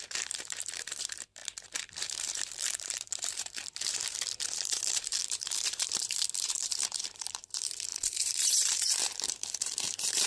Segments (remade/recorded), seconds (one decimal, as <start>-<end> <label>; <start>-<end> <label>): 0.0-10.3 remade